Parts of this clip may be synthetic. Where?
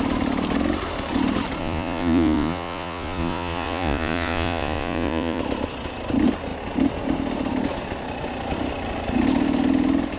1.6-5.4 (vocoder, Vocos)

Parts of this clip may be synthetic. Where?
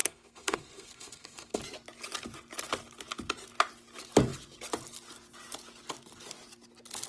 0.0-1.6 (codec, SNAC)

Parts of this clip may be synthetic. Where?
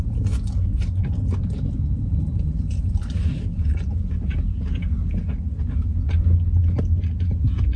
1.9-3.8 (vocoder, BigVGAN v2)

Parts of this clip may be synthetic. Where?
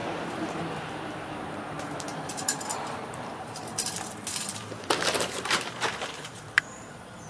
0.0-3.7 (vocoder, BigVGAN v2); 4.3-7.3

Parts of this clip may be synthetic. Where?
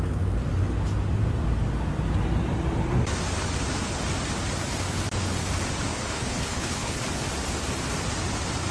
5.9-7.0 (codec, HILCodec)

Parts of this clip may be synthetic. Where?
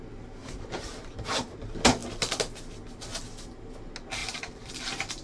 0.4-1.5 (vocoder, BigVGAN v2); 4.2-4.7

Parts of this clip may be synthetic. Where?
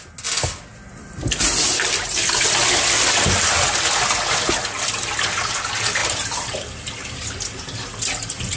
0.7-1.4 (vocoder, BigVGAN v2); 6.0-7.1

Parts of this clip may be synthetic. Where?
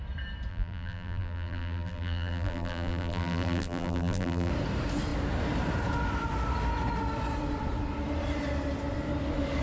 0.5-4.5 (vocoder, BigVGAN v2)